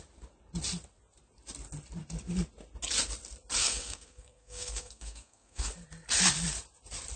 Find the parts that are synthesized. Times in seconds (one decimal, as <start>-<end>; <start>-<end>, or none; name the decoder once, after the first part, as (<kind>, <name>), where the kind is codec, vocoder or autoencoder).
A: 3.6-5.7 (codec, SNAC)